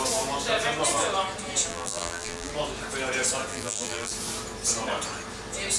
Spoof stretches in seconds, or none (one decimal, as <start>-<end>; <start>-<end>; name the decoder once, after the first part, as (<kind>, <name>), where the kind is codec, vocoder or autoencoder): 1.7-2.5 (vocoder, BigVGAN v2); 3.5-4.1